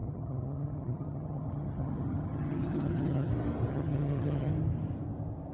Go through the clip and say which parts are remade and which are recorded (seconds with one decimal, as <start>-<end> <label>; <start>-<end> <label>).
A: 0.0-3.3 remade; 3.3-3.7 recorded; 3.7-4.5 remade; 4.5-5.5 recorded